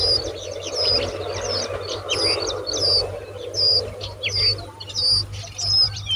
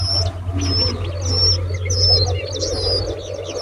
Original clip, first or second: second